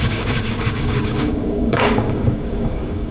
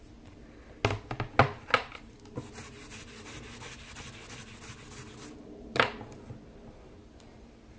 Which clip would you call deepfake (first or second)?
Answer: first